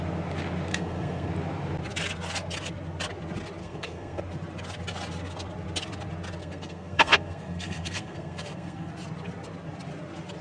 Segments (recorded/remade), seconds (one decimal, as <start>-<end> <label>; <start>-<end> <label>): 0.0-0.7 recorded; 0.7-1.3 remade; 1.3-3.6 recorded; 3.6-4.2 remade; 4.2-6.4 recorded; 6.4-8.9 remade; 8.9-10.4 recorded

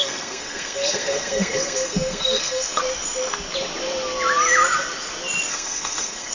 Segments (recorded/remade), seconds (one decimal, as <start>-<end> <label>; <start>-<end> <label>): 0.0-2.8 remade; 2.8-5.5 recorded; 5.5-6.3 remade

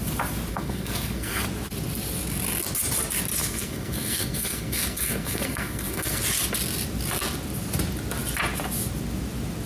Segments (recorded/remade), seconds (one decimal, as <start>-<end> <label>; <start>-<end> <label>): 0.0-0.5 recorded; 0.5-1.4 remade; 1.4-3.4 recorded; 3.4-6.2 remade; 6.2-9.7 recorded

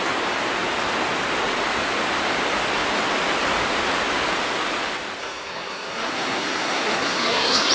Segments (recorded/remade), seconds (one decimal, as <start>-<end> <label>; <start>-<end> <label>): 0.0-5.2 recorded; 5.2-7.7 remade

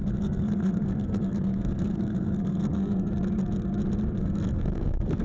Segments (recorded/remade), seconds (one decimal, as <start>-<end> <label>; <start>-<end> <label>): 0.0-3.1 remade; 3.1-4.2 recorded; 4.2-5.2 remade

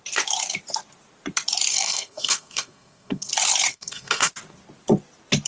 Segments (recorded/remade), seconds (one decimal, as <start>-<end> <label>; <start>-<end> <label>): 0.0-1.7 recorded; 1.7-3.3 remade; 3.3-3.7 recorded; 3.7-4.3 remade; 4.3-5.5 recorded

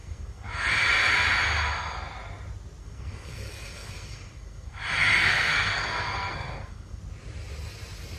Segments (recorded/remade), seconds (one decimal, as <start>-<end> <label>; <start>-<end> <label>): 0.0-0.7 remade; 0.7-2.8 recorded; 2.8-4.8 remade; 4.8-5.2 recorded; 5.2-7.0 remade; 7.0-8.2 recorded